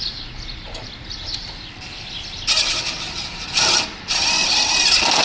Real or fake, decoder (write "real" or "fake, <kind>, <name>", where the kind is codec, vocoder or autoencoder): real